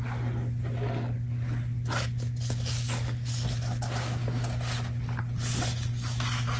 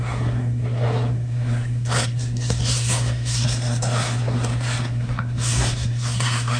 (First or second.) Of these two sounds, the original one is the first